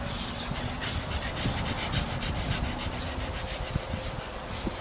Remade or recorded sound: recorded